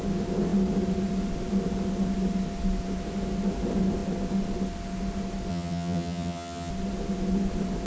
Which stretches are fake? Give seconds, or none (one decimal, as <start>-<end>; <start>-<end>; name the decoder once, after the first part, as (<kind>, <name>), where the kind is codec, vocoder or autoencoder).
5.5-6.7 (vocoder, HiFi-GAN)